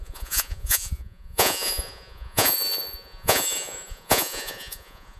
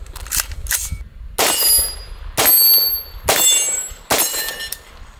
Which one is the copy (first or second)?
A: first